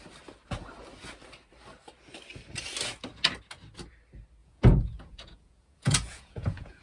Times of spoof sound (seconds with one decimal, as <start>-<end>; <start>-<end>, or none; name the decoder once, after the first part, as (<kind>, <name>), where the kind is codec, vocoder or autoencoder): 4.4-6.8 (vocoder, Vocos)